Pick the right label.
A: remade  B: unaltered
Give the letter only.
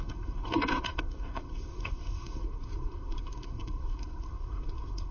A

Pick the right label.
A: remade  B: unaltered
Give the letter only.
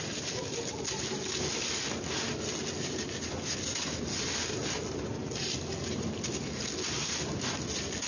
B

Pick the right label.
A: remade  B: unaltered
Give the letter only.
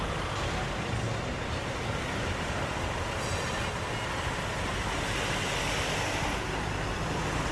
B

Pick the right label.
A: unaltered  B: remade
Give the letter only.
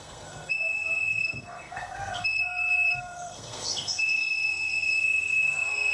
B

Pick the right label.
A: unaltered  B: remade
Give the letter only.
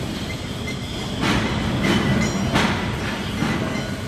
A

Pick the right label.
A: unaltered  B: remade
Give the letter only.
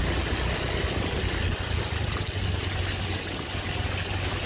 A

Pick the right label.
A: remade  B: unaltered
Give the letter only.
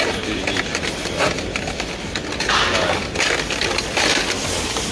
B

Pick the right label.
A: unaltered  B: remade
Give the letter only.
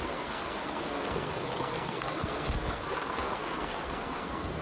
B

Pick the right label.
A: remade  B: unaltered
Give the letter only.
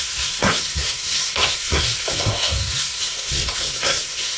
A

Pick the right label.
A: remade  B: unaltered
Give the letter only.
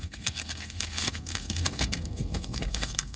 A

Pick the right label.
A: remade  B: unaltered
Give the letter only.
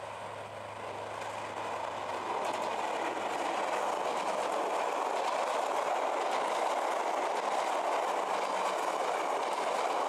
B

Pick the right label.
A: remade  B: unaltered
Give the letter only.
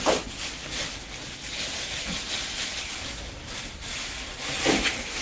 B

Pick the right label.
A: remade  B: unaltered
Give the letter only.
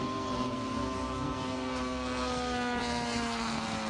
A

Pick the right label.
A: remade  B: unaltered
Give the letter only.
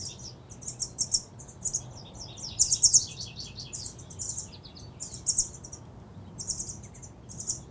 B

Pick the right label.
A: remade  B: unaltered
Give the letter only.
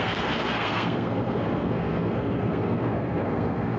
A